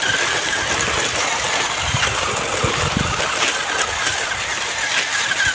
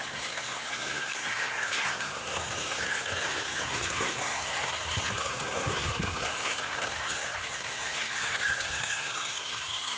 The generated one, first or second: second